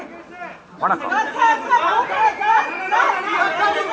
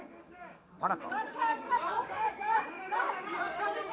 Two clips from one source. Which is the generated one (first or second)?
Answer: second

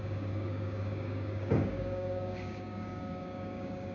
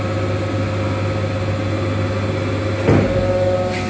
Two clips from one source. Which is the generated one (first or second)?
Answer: first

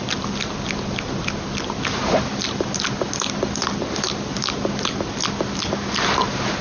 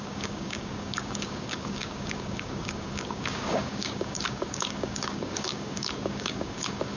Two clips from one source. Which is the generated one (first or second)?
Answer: second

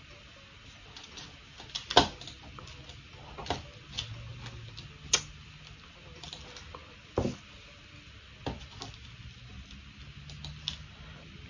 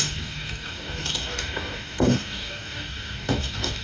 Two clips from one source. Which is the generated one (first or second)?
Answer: second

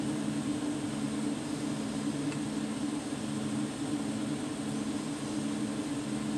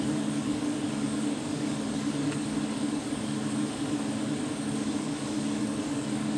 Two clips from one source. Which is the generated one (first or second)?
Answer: second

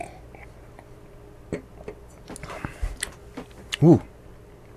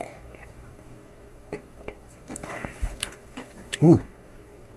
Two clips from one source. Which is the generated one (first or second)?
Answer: second